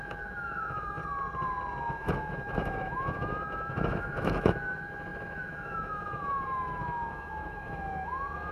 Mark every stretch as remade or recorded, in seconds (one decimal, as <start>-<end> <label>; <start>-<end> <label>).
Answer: 0.0-1.0 remade; 1.0-1.8 recorded; 1.8-8.5 remade